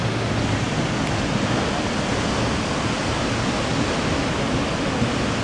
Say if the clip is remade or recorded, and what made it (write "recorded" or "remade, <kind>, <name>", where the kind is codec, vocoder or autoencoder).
recorded